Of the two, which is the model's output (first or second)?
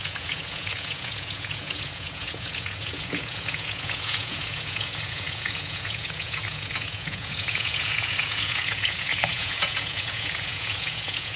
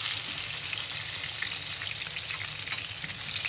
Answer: first